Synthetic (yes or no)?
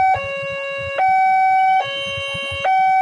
no